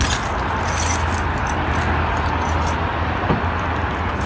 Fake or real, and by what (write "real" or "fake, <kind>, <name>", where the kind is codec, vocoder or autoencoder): real